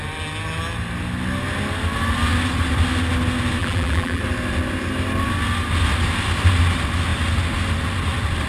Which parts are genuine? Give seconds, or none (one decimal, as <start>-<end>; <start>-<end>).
0.0-3.6; 4.2-8.5